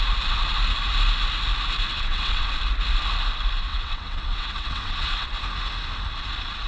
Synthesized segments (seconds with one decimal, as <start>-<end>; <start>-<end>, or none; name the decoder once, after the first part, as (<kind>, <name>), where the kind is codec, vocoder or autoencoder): 1.9-2.5 (vocoder, WaveNeXt); 3.7-5.4